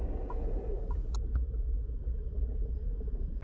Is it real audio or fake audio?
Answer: real